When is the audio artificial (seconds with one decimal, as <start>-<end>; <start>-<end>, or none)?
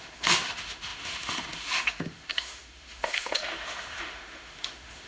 0.0-5.1